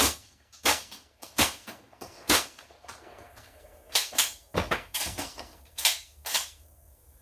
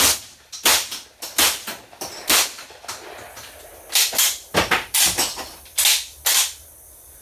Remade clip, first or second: first